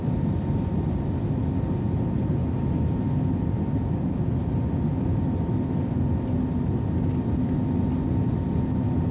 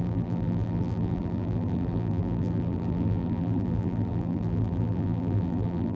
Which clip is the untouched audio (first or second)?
first